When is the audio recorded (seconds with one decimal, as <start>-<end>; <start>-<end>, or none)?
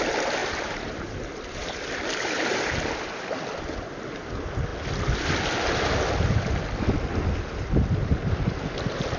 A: 0.0-0.4; 3.4-9.2